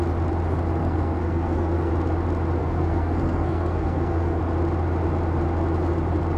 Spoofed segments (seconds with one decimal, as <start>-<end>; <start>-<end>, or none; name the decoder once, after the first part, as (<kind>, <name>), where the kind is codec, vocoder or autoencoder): 0.8-1.9 (codec, SNAC); 2.6-4.4